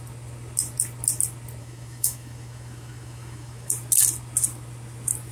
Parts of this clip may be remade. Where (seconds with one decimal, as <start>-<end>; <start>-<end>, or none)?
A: 1.6-3.7